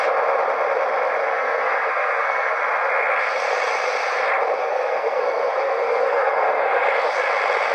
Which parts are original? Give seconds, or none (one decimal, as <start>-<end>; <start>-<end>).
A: 0.0-1.2; 2.6-4.6; 6.8-7.7